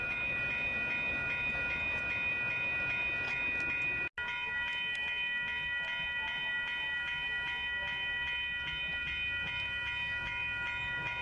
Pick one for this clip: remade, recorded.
recorded